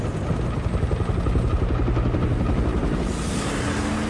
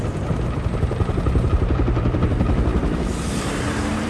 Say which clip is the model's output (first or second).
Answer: second